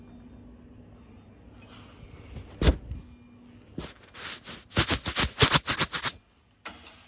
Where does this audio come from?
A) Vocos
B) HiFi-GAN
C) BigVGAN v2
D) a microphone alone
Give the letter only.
D